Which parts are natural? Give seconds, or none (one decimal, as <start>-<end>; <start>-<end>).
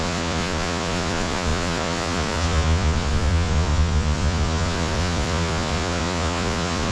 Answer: none